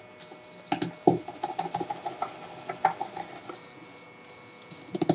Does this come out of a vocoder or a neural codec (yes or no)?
no